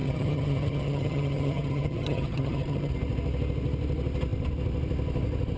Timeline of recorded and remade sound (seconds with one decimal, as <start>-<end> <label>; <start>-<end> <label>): 0.0-2.9 remade; 2.9-5.6 recorded

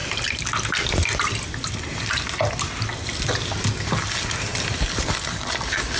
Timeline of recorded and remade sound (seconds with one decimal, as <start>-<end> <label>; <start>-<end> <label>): 0.0-6.0 recorded

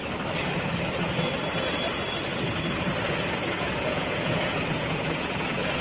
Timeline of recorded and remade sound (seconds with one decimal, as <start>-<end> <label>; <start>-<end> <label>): 0.0-3.3 recorded; 3.3-5.8 remade